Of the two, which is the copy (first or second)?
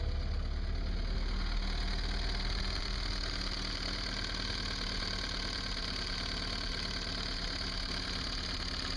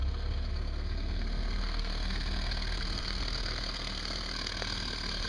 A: second